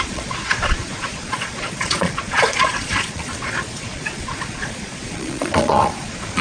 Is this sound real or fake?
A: fake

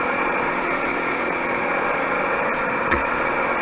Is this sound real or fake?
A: fake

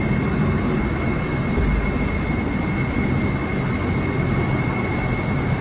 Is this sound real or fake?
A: real